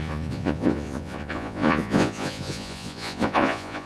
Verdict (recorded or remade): remade